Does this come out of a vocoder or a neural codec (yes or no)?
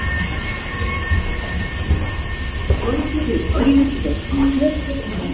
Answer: no